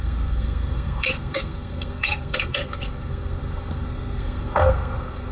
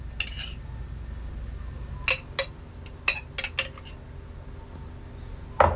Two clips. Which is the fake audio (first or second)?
first